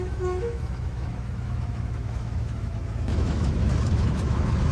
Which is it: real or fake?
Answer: fake